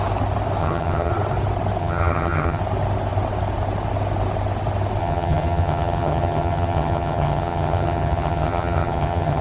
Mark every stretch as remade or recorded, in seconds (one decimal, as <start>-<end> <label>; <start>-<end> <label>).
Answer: 0.0-0.6 recorded; 0.6-1.1 remade; 1.1-1.8 recorded; 1.8-2.6 remade; 2.6-5.0 recorded; 5.0-9.4 remade